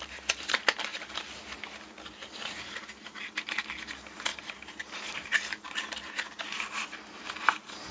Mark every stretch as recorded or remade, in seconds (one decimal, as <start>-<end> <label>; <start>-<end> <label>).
0.0-4.3 recorded; 4.3-6.4 remade; 6.4-7.9 recorded